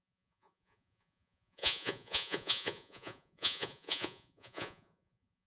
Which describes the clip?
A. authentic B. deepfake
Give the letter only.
B